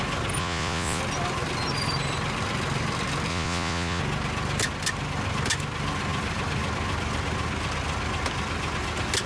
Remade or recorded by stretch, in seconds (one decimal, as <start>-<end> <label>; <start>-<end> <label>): 0.0-0.4 recorded; 0.4-1.0 remade; 1.0-3.3 recorded; 3.3-4.0 remade; 4.0-9.3 recorded